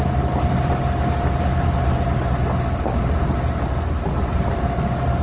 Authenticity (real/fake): real